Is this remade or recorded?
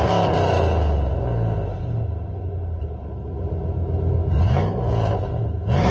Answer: recorded